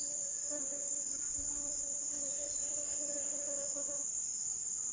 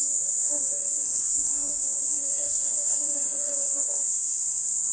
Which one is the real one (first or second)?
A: first